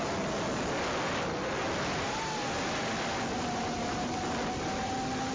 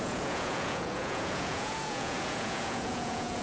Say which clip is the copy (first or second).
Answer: second